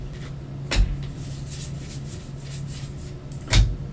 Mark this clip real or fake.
real